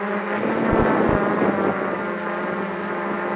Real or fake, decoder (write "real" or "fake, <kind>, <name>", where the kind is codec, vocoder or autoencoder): real